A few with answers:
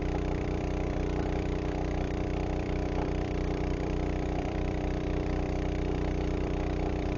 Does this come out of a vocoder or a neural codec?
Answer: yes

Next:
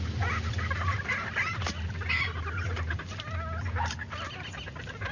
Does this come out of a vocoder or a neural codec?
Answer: no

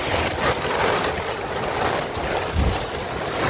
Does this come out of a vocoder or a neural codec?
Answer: no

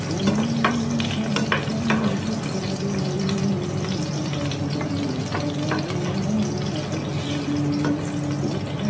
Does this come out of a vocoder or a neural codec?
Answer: no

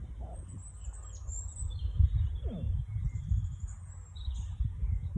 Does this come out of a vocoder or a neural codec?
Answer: no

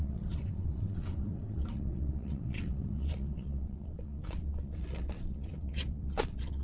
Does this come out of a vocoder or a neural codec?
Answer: yes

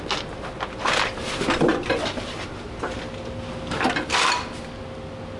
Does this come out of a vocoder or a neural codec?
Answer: no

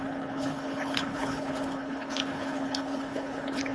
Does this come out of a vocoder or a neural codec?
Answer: yes